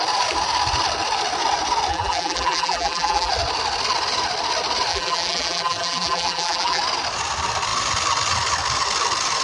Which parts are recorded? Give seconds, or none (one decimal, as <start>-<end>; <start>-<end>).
0.0-1.9; 3.3-4.9; 6.8-9.4